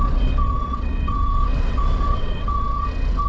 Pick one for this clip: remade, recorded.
remade